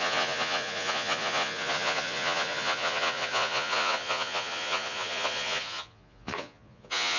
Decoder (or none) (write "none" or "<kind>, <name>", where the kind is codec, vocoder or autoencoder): vocoder, Vocos